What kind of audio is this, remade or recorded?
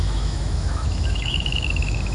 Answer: remade